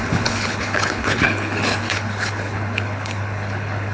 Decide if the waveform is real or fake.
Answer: fake